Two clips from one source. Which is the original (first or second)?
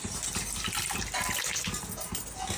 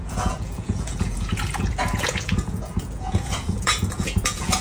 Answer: first